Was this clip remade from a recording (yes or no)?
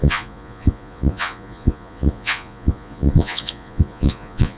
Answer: yes